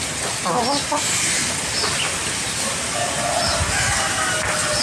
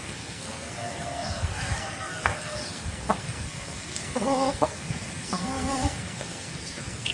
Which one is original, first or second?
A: first